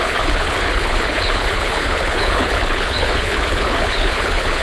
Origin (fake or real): fake